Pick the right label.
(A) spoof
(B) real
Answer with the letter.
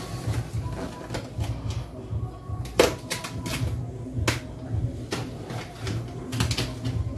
B